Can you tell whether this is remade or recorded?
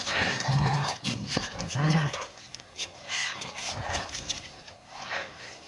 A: remade